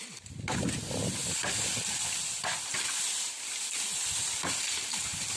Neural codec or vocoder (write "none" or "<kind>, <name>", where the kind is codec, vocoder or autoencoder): none